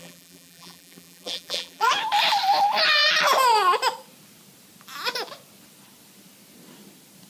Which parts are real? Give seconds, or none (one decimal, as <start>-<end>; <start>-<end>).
1.9-7.3